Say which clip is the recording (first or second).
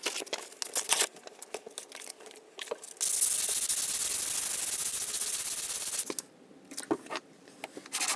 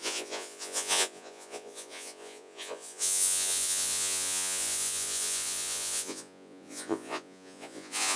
first